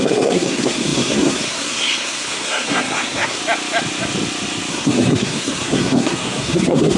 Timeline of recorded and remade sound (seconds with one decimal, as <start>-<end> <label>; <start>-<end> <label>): 0.0-3.4 remade; 3.4-4.7 recorded; 4.7-7.0 remade